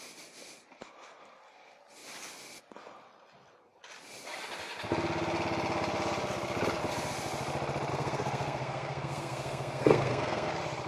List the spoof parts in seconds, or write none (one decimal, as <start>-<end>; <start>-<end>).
7.9-10.5